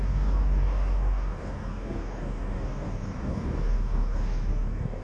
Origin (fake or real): fake